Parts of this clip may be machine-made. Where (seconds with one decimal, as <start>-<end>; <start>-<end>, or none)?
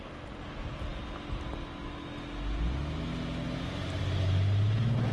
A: none